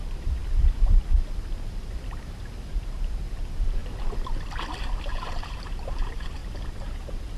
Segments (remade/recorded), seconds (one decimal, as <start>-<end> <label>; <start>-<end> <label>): 0.0-0.4 remade; 0.4-2.7 recorded; 2.7-3.8 remade; 3.8-5.1 recorded; 5.1-7.4 remade